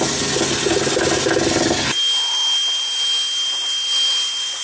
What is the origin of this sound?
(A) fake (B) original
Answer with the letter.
B